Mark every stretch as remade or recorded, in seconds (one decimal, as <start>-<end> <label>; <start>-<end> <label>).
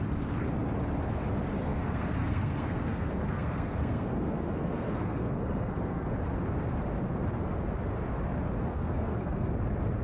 0.0-1.6 recorded; 1.6-6.1 remade; 6.1-8.7 recorded; 8.7-9.5 remade; 9.5-10.0 recorded